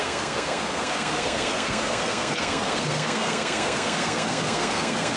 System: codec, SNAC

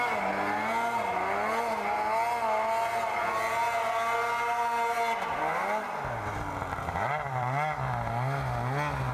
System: none